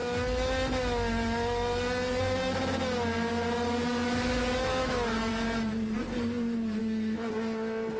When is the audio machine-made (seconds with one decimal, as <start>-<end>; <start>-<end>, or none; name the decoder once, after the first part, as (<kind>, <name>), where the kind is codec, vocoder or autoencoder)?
4.8-5.3 (autoencoder, DAC-VAE); 6.8-7.3